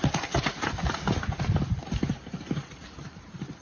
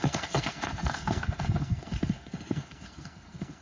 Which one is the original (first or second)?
first